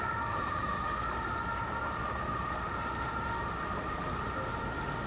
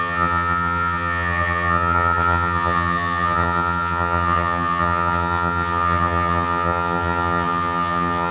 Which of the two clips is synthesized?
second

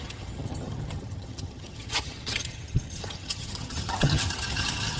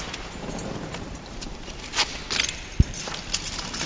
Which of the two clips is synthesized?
first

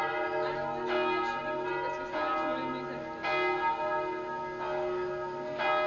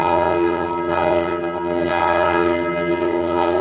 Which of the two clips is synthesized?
second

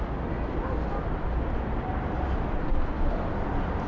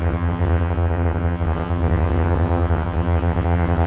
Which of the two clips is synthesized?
second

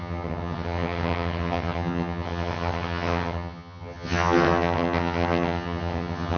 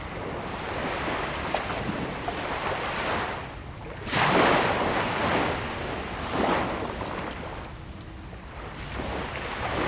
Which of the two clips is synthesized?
first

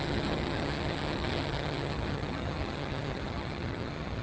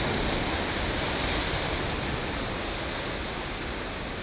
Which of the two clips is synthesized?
first